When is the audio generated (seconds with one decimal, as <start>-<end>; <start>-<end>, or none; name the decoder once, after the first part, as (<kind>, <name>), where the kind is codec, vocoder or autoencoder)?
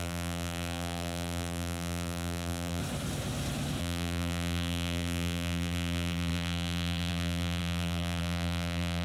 0.0-2.8 (vocoder, BigVGAN v2); 3.8-9.0